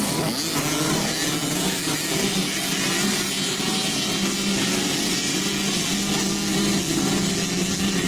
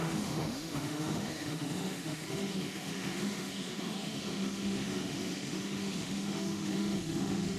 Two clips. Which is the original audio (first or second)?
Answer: first